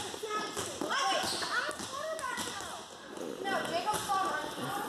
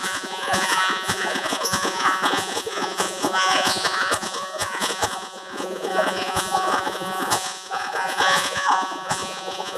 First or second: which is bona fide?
first